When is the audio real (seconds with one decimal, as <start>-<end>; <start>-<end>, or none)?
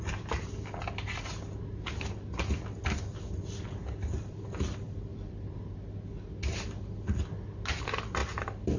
0.0-5.1; 5.7-8.8